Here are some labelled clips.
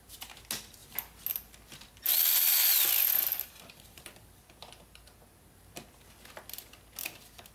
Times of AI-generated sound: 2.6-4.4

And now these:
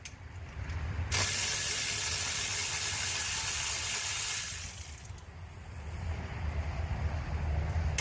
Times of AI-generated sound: none

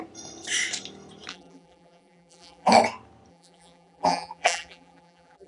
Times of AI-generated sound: 1.3-2.7; 3.3-5.5

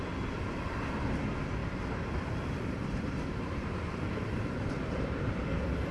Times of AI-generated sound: 1.6-5.1

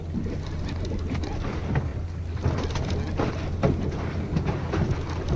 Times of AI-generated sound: none

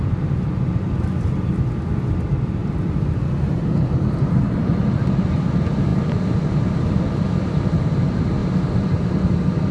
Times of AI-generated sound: 2.6-4.9